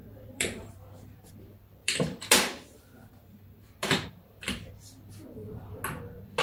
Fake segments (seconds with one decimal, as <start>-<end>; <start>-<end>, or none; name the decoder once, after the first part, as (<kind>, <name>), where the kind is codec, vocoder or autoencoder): 0.0-1.3 (vocoder, BigVGAN v2); 1.8-4.7